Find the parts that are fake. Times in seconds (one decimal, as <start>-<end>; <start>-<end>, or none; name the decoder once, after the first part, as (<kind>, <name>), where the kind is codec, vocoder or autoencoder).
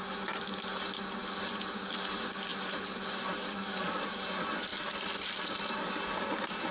2.5-4.0 (vocoder, BigVGAN v2)